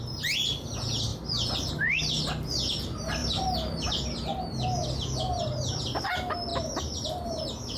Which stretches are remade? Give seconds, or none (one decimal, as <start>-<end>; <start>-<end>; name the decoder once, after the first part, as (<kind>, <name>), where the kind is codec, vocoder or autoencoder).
none